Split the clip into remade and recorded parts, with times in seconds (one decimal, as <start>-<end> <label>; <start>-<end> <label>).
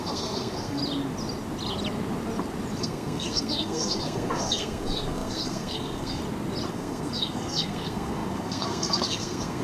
0.0-0.8 remade; 0.8-2.8 recorded; 2.8-6.2 remade; 6.2-6.7 recorded; 6.7-9.6 remade